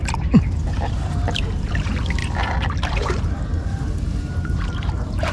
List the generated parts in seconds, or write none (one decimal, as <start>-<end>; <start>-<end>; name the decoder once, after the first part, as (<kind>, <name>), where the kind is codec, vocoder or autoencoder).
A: 0.6-2.2 (vocoder, BigVGAN v2); 2.9-5.3